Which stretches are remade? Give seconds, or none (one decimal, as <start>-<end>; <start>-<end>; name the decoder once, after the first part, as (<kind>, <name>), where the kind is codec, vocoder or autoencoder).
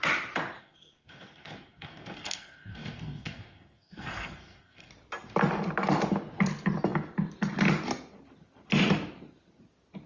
0.6-4.9 (codec, SNAC)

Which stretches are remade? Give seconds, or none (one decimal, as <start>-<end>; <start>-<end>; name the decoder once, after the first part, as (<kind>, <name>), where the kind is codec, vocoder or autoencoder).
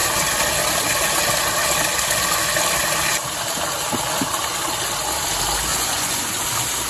5.7-6.4 (vocoder, Vocos)